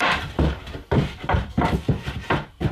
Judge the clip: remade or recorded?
remade